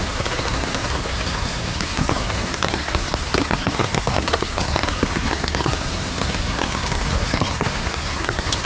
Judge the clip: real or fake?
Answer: fake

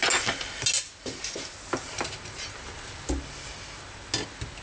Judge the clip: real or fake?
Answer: real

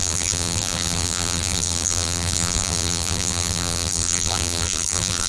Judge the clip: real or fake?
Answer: fake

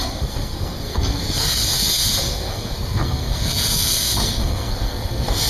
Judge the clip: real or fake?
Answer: fake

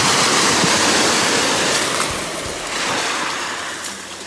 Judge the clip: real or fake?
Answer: real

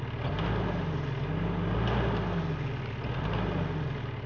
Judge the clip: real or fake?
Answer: real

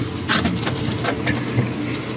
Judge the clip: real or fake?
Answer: real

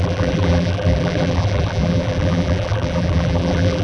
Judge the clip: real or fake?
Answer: fake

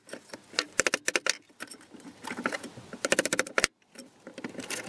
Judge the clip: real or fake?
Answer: real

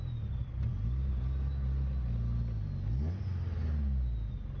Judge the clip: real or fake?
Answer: real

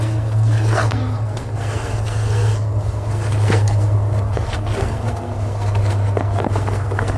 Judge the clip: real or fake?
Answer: fake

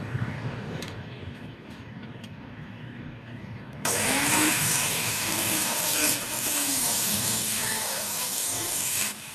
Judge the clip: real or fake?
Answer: fake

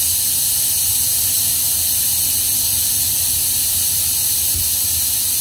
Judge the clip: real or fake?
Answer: real